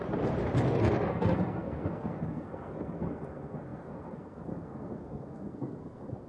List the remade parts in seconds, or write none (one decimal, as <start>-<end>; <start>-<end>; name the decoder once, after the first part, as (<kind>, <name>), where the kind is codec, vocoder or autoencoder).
1.1-6.3 (codec, SNAC)